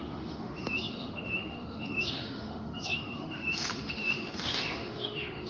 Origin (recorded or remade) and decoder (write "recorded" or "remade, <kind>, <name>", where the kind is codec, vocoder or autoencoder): remade, autoencoder, DAC-VAE